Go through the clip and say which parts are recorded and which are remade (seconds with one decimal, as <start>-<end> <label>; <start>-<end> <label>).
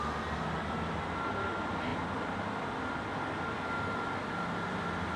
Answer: 0.0-5.2 recorded